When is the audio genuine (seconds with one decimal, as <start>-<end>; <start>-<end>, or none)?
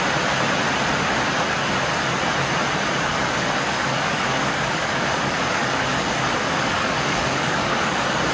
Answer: 0.0-3.1